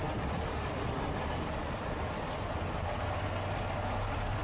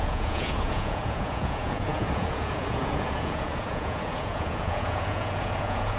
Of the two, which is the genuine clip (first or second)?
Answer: first